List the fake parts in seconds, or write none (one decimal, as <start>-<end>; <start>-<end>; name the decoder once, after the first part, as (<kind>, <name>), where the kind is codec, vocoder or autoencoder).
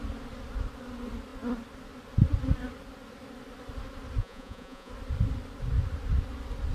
4.2-4.9 (vocoder, Vocos)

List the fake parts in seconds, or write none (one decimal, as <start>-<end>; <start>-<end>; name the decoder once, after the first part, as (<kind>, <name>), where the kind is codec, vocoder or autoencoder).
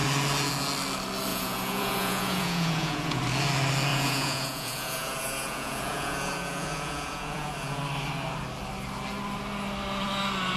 1.3-3.2 (vocoder, Vocos); 3.9-7.8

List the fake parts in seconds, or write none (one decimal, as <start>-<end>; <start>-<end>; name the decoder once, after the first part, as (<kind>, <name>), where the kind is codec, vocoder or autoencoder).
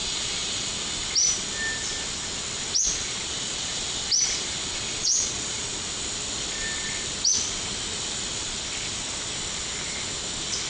0.0-0.7 (vocoder, Vocos); 2.8-3.8; 4.9-5.7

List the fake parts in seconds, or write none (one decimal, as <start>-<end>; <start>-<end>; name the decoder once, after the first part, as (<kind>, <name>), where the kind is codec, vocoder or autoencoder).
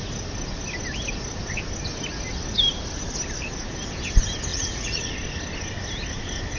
4.5-5.1 (vocoder, Vocos)